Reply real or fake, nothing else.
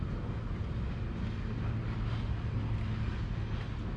real